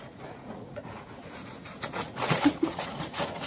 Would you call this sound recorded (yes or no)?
no